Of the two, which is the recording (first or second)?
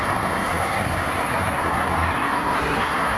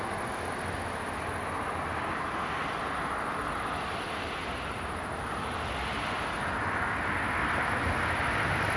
second